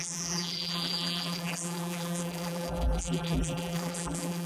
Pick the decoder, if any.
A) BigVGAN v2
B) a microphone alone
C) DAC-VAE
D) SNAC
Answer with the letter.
A